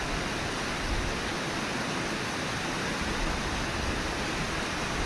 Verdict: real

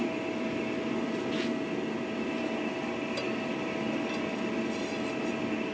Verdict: real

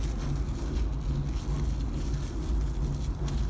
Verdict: real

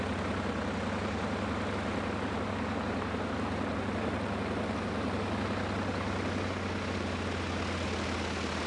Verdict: real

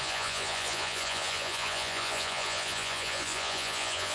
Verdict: fake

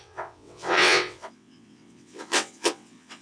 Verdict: fake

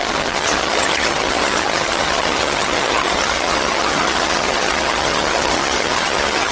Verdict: fake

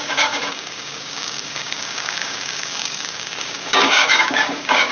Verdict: fake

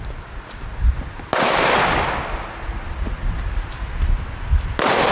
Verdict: real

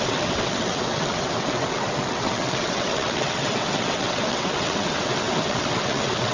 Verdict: fake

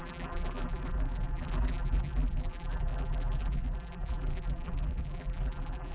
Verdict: fake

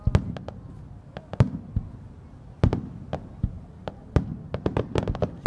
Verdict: real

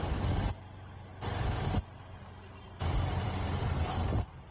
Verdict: real